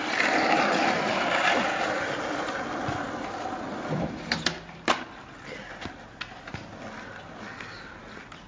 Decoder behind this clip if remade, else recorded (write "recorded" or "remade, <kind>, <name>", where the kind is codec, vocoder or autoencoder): recorded